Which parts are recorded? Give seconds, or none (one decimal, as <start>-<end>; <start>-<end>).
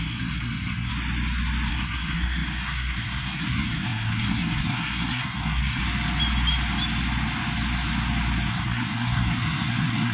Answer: 0.9-1.7; 5.8-8.5